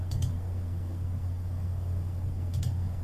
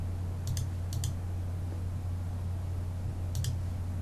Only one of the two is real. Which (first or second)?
second